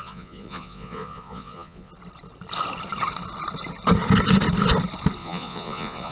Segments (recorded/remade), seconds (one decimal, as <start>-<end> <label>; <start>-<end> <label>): 0.0-1.9 remade; 1.9-5.2 recorded; 5.2-6.1 remade